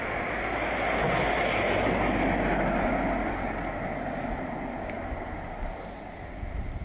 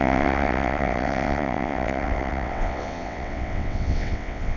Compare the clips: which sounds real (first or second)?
first